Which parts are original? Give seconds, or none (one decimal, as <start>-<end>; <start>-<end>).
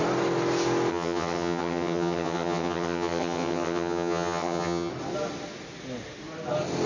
0.0-0.9; 4.9-6.9